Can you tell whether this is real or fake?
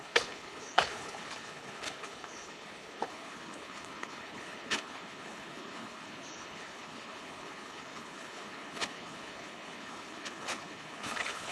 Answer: fake